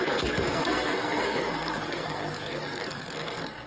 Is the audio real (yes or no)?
no